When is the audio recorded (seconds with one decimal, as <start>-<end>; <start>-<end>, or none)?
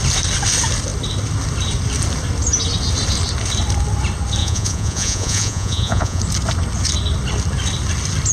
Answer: 0.0-4.4; 6.2-8.3